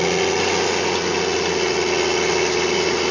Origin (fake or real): real